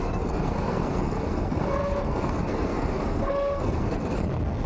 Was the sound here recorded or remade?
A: remade